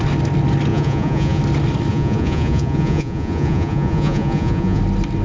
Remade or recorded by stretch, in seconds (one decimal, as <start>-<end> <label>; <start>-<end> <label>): 0.0-0.7 recorded; 0.7-1.4 remade; 1.4-1.9 recorded; 1.9-4.8 remade; 4.8-5.2 recorded